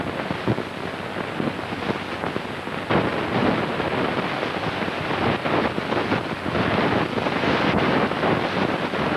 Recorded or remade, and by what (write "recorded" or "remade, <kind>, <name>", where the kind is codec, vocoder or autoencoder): recorded